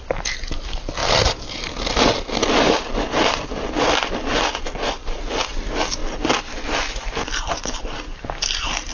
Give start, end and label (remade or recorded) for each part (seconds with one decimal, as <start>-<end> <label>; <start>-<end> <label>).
0.0-1.0 recorded; 1.0-5.5 remade; 5.5-8.9 recorded